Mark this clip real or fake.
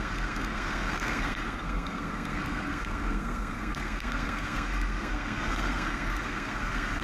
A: fake